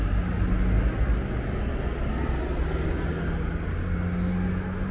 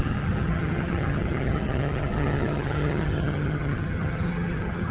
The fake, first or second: second